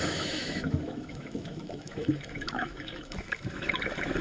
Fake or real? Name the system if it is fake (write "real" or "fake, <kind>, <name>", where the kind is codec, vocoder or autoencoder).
fake, autoencoder, DAC-VAE